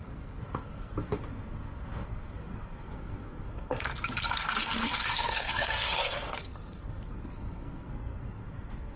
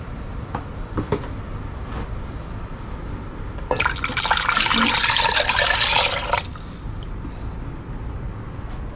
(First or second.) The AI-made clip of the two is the first